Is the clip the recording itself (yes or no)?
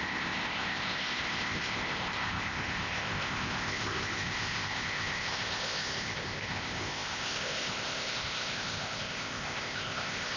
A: no